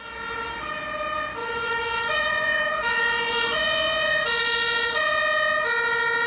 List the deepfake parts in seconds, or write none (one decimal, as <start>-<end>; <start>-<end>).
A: 1.4-5.2